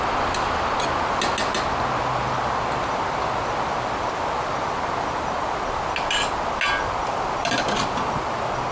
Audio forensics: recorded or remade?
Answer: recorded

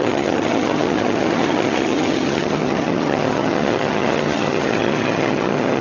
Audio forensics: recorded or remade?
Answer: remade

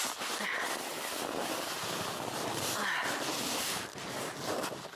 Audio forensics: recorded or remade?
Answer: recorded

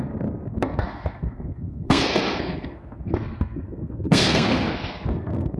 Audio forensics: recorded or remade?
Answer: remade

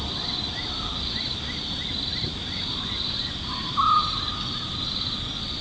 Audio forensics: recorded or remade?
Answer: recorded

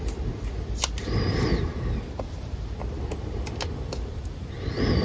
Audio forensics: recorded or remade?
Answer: recorded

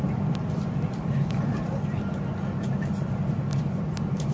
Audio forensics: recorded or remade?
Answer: recorded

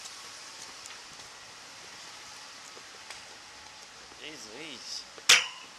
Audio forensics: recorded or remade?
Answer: recorded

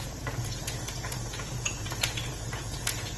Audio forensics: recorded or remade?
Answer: remade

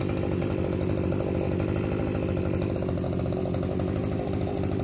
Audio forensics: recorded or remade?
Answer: recorded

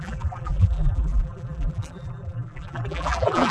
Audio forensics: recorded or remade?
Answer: remade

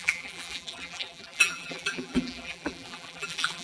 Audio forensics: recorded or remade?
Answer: remade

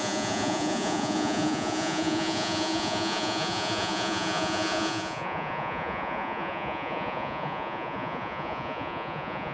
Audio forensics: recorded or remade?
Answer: remade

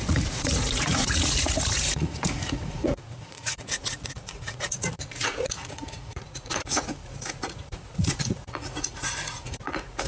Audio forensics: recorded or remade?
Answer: remade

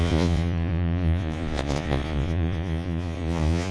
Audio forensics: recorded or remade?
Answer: remade